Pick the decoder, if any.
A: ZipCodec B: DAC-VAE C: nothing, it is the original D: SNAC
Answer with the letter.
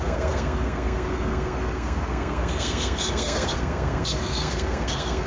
D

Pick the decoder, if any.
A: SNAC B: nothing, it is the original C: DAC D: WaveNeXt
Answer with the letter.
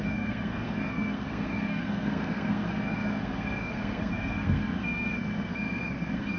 A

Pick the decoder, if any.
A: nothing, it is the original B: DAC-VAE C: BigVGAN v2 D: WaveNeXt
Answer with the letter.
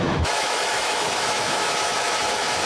B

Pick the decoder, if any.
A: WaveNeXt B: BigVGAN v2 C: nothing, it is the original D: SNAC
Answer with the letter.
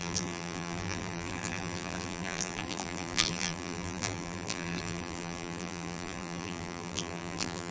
B